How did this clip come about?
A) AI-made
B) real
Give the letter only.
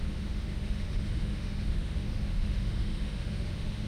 A